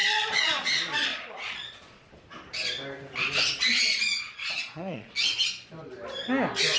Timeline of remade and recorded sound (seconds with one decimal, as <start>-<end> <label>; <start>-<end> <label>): 0.0-0.7 remade; 0.7-1.1 recorded; 1.1-2.1 remade; 2.1-3.7 recorded; 3.7-5.1 remade; 5.1-6.8 recorded